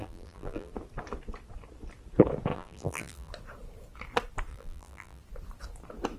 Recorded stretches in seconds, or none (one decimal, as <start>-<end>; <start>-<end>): 0.7-2.5; 3.3-4.5; 5.2-6.2